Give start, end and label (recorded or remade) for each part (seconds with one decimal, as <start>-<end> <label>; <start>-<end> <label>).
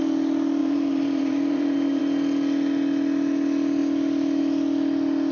0.0-0.6 recorded; 0.6-2.0 remade; 2.0-5.3 recorded